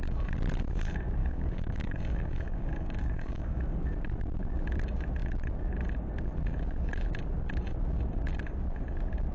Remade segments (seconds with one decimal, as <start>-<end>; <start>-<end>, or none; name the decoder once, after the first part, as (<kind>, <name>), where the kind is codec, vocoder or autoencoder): 1.2-3.6 (codec, DAC)